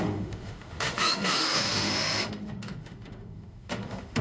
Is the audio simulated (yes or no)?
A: yes